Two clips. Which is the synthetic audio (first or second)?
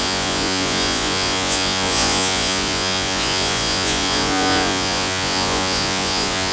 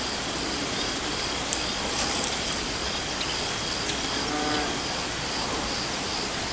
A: first